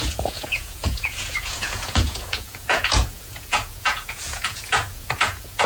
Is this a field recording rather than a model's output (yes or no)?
no